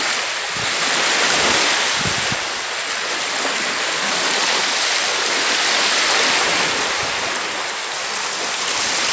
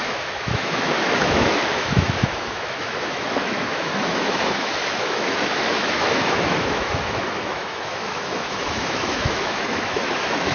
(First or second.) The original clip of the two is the first